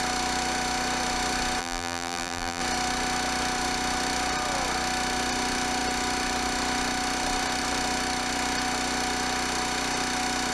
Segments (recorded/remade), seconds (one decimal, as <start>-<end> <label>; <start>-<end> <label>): 0.0-1.6 recorded; 1.6-2.6 remade; 2.6-10.5 recorded